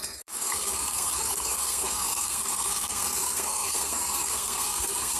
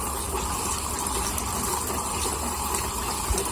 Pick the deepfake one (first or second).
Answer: first